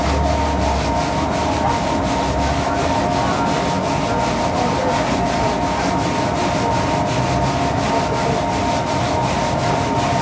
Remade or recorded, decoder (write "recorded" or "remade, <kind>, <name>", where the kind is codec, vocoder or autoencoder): recorded